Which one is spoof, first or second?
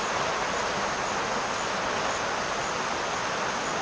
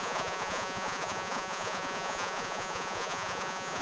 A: second